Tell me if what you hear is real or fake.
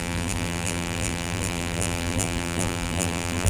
fake